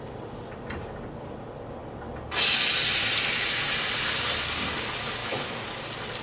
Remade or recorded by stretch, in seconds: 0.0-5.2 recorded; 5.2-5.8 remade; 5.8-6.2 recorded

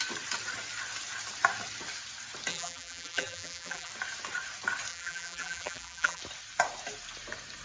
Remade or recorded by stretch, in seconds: 0.0-2.5 recorded; 2.5-3.9 remade; 3.9-4.9 recorded; 4.9-6.2 remade; 6.2-7.6 recorded

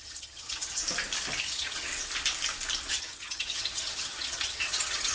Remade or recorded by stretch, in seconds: 0.0-0.8 remade; 0.8-1.4 recorded; 1.4-1.9 remade; 1.9-2.9 recorded; 2.9-5.1 remade

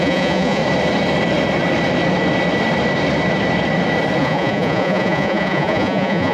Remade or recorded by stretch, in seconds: 0.0-0.6 remade; 0.6-4.2 recorded; 4.2-6.3 remade

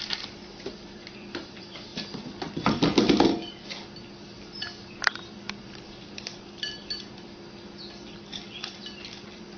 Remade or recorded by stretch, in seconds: 0.0-1.9 remade; 1.9-4.9 recorded; 4.9-9.6 remade

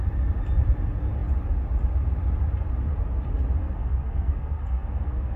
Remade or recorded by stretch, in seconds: 0.0-3.6 recorded; 3.6-5.4 remade